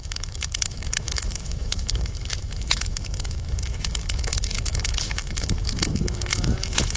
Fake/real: fake